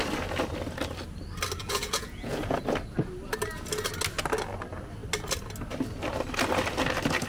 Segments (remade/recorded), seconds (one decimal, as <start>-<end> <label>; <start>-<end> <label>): 0.0-1.6 recorded; 1.6-2.6 remade; 2.6-7.3 recorded